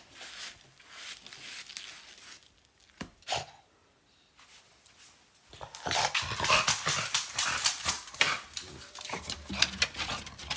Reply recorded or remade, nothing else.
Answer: recorded